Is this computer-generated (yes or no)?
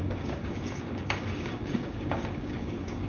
yes